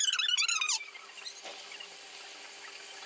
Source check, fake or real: real